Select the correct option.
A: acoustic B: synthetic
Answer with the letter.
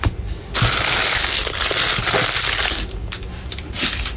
A